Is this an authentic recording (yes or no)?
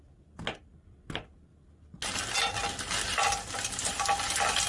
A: yes